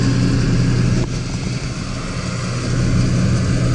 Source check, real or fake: real